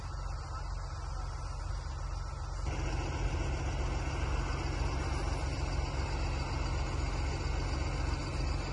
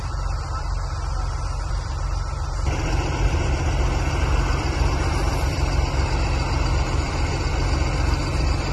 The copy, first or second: second